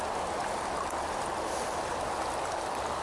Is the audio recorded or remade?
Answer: recorded